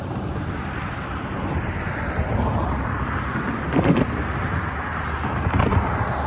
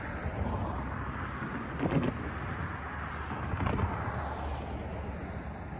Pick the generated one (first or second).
first